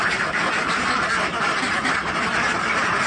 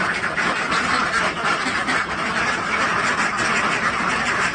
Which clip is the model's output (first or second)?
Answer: first